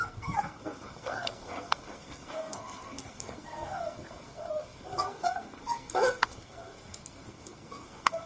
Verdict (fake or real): fake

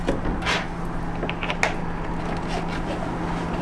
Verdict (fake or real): real